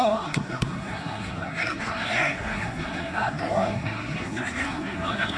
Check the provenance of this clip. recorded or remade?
remade